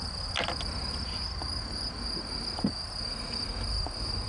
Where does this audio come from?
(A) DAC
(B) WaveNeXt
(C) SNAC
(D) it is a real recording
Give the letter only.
D